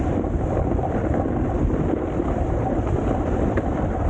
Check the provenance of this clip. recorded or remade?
recorded